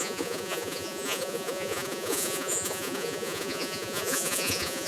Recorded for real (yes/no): no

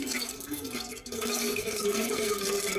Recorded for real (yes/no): no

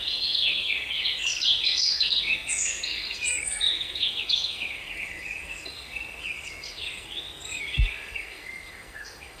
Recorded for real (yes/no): no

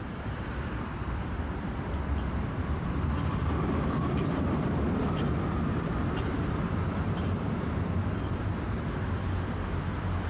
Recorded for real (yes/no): no